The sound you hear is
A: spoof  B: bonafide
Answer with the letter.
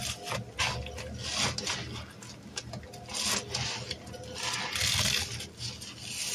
B